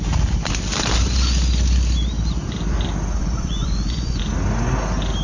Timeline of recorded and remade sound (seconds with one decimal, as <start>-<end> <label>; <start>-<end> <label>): 0.0-3.2 recorded; 3.2-4.2 remade; 4.2-5.2 recorded